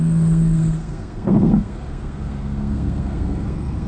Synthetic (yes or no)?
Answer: yes